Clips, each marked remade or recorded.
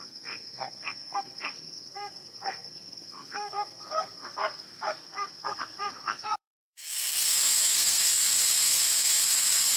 remade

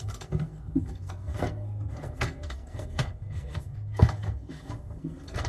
remade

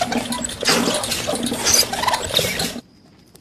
recorded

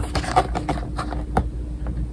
recorded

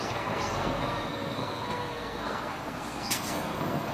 remade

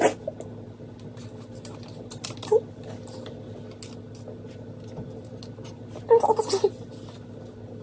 recorded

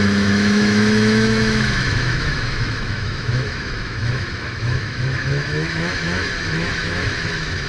remade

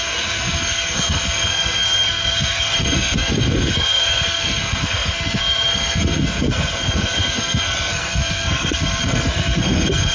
remade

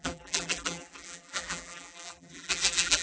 remade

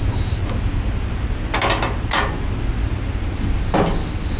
recorded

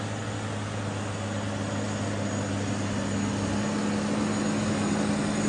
recorded